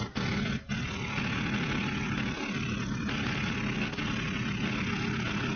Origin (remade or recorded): recorded